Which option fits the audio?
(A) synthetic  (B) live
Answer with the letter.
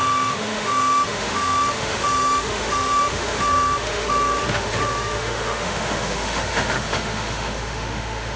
A